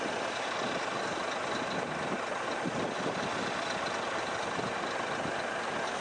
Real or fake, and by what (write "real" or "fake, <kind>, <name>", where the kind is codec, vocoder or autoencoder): real